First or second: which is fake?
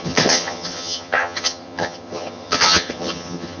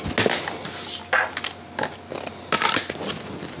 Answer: first